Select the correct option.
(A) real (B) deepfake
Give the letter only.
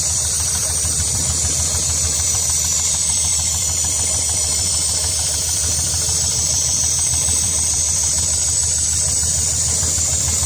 B